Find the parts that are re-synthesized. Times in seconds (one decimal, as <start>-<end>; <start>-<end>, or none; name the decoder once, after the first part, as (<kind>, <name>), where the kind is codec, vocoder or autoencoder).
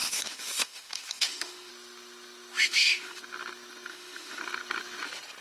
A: 0.0-1.7 (autoencoder, DAC-VAE); 2.6-3.2; 3.9-4.4